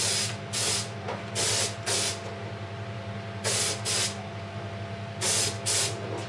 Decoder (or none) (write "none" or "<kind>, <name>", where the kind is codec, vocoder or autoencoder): none